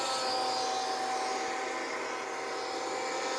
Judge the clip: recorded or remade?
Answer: recorded